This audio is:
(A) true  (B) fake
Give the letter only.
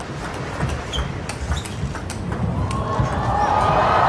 A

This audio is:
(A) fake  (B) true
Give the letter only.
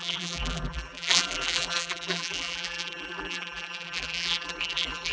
A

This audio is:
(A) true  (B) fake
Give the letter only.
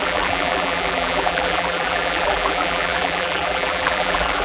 B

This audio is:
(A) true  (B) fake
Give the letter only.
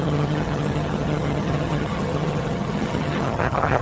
B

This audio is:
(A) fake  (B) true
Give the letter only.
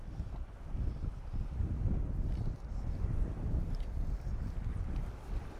B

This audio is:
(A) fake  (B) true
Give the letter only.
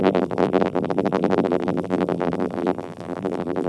A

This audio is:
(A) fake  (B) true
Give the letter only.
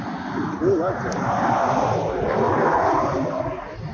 B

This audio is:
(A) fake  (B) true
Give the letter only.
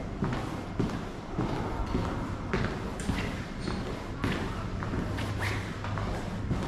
B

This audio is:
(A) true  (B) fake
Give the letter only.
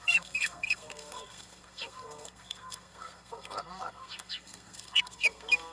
B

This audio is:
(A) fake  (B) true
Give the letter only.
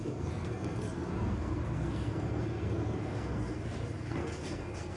A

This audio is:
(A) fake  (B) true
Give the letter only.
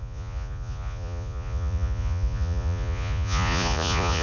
A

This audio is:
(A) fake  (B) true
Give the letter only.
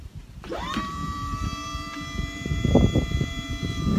A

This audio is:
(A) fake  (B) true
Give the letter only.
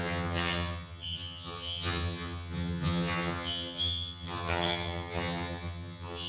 A